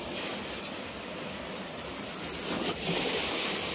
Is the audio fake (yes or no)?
no